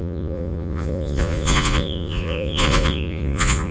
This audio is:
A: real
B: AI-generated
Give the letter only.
B